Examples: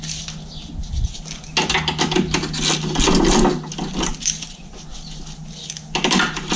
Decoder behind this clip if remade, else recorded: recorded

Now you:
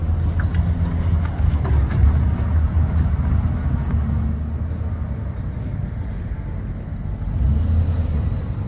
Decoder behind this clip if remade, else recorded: recorded